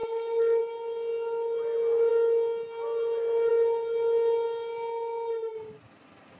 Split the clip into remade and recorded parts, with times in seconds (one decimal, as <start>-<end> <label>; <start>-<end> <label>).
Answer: 0.0-0.6 remade; 0.6-6.4 recorded